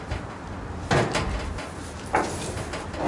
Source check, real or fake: real